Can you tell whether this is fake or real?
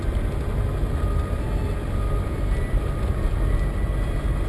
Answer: real